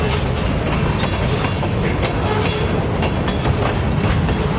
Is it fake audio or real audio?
real